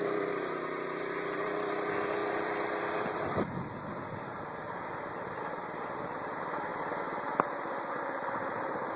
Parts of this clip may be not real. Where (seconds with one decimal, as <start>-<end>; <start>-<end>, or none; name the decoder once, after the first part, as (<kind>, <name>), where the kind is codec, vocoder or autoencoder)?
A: 0.0-9.0 (vocoder, BigVGAN v2)